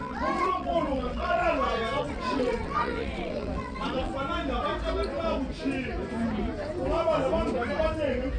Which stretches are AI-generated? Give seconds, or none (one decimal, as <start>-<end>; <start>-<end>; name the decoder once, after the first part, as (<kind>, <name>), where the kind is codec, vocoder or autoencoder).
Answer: 0.0-1.4 (vocoder, WaveNeXt); 2.0-4.1